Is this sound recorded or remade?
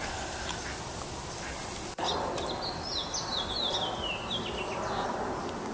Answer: recorded